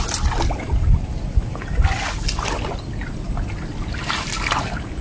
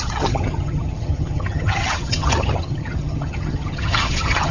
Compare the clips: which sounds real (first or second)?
first